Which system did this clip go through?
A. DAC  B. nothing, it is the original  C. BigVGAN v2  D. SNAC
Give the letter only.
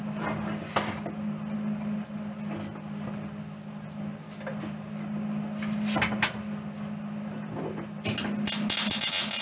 B